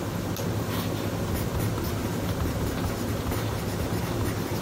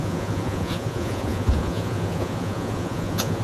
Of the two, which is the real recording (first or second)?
first